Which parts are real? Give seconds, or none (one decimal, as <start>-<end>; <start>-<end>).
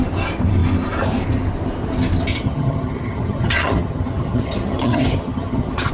0.0-2.3